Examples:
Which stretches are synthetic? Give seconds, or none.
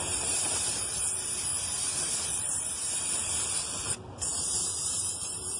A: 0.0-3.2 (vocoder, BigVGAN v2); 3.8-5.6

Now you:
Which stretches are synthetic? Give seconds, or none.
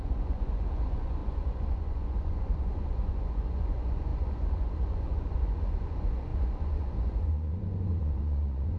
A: 0.0-8.8 (vocoder, Vocos)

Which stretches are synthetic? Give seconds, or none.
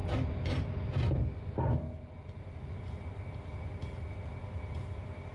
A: none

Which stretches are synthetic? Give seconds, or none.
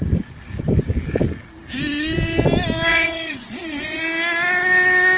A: 2.9-4.0 (vocoder, Vocos)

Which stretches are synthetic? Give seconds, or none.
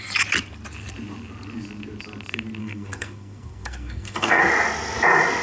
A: 2.6-4.4 (codec, SNAC)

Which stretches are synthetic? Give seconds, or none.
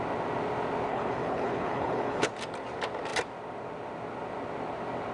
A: 0.9-2.3 (codec, HILCodec)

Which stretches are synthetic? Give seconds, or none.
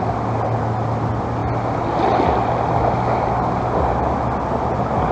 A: none